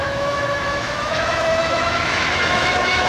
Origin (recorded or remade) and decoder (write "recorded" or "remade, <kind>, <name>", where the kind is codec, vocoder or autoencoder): remade, autoencoder, DAC-VAE